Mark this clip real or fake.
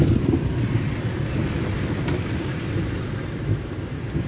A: real